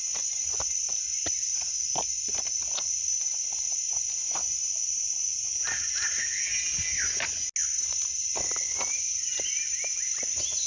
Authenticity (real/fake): real